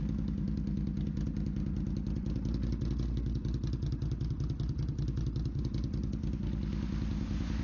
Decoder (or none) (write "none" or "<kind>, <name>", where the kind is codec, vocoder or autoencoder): none